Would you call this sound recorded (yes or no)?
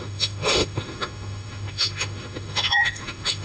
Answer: no